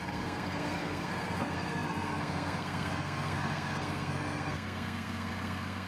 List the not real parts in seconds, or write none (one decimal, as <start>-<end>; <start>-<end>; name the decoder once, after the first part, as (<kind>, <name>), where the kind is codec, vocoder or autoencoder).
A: 0.0-5.9 (codec, SNAC)